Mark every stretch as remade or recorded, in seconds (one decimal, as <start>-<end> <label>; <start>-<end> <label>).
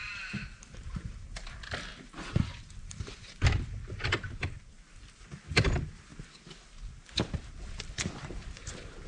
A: 0.0-4.1 remade; 4.1-9.1 recorded